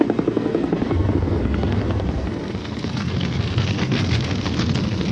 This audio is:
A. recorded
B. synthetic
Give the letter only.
B